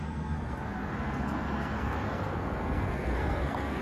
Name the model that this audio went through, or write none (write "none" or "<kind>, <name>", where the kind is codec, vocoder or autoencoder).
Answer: codec, SNAC